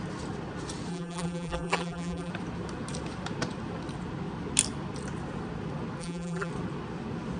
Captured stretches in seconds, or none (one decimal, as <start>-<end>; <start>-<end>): 0.0-0.9; 2.3-6.0; 6.5-7.4